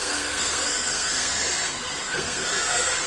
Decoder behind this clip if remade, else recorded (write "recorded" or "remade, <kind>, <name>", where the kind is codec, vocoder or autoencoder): remade, codec, SNAC